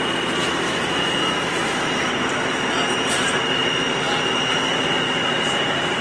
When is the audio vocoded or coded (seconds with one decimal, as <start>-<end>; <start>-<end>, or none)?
0.4-2.1